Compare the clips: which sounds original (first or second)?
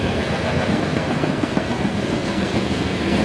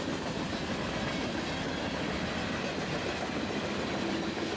second